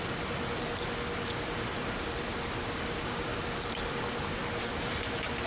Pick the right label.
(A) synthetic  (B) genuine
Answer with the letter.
B